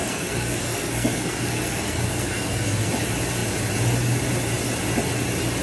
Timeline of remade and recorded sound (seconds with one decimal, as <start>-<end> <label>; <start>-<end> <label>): 0.0-2.9 remade; 2.9-5.6 recorded